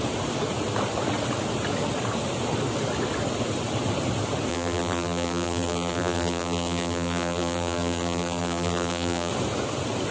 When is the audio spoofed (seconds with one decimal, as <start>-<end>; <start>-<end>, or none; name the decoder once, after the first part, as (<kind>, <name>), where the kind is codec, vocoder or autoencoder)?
4.5-9.3 (vocoder, BigVGAN v2)